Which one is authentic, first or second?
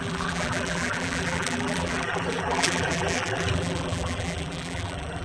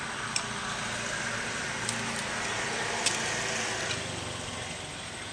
second